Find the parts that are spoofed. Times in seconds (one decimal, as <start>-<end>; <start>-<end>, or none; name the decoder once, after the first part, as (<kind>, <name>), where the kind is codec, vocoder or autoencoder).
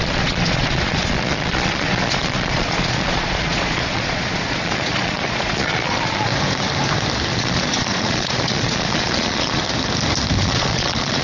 0.0-6.3 (vocoder, Vocos); 7.3-9.6; 10.4-11.2